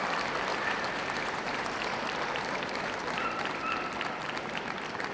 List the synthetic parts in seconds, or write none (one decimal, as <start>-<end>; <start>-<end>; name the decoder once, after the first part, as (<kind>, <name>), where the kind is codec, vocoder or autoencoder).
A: 0.5-3.6 (vocoder, BigVGAN v2)